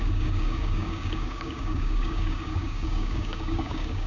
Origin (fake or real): fake